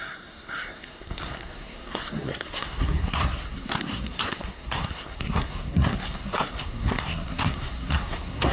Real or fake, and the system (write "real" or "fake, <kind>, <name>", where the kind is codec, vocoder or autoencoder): fake, codec, SNAC